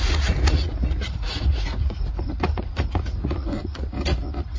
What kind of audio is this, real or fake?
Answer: fake